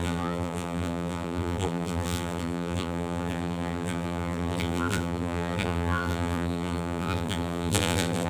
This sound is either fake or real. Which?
fake